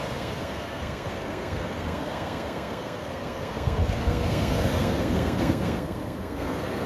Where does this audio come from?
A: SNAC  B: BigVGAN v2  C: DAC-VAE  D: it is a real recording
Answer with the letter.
A